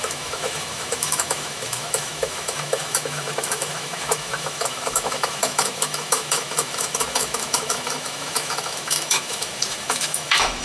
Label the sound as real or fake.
fake